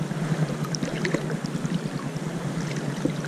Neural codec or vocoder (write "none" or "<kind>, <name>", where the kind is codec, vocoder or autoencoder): none